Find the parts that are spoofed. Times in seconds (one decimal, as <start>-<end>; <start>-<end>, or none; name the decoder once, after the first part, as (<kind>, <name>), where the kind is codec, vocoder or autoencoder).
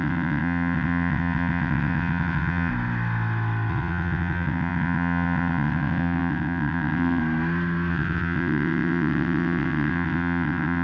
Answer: 0.0-2.7 (vocoder, WaveNeXt); 3.7-7.2; 7.9-10.8